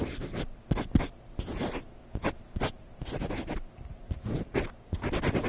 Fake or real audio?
real